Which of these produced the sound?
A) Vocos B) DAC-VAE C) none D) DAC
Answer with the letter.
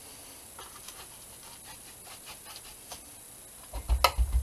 C